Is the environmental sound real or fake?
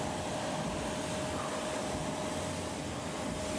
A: real